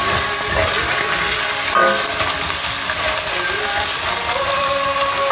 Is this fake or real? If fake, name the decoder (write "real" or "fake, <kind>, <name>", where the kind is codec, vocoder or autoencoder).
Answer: real